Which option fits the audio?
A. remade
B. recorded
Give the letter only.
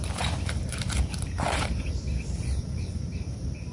A